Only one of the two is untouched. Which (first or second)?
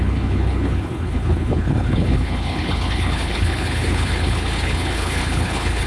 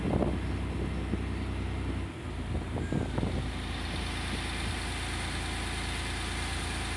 second